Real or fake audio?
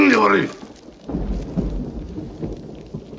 real